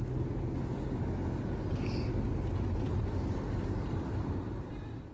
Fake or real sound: real